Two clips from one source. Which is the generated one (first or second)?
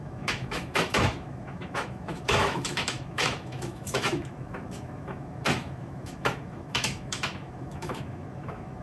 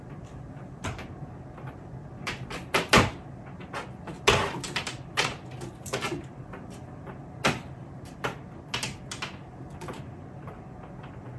first